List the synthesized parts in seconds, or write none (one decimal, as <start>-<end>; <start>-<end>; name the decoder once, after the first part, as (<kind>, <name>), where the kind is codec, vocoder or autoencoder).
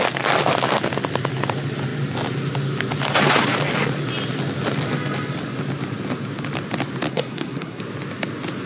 7.1-7.8 (codec, SNAC)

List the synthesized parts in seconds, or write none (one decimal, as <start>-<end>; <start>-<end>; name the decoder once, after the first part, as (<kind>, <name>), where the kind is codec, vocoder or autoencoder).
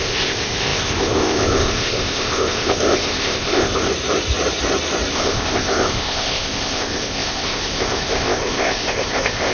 0.0-3.9 (codec, ZipCodec); 5.1-9.5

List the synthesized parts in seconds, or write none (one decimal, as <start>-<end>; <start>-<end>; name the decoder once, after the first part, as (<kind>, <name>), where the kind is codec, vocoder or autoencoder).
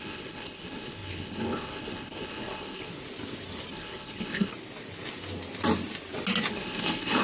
0.0-2.9 (codec, HILCodec); 3.7-4.5; 6.5-7.2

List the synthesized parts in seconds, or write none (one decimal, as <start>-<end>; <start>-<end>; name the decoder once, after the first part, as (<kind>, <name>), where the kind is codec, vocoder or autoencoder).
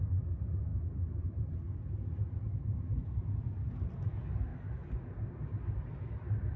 0.0-4.5 (vocoder, BigVGAN v2); 6.1-6.6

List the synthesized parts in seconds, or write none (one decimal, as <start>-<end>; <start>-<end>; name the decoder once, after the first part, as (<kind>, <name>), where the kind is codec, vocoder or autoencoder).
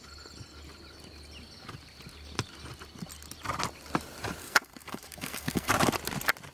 4.4-5.7 (codec, SNAC)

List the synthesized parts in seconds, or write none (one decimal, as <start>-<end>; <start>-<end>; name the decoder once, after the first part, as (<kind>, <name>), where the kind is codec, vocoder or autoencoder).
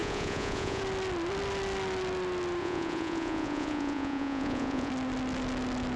0.0-0.8 (vocoder, Vocos); 2.6-4.9